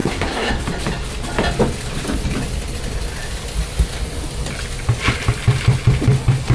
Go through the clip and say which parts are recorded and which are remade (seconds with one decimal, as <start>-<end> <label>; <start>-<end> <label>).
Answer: 0.0-0.5 remade; 0.5-6.5 recorded